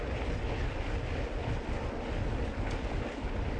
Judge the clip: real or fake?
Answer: real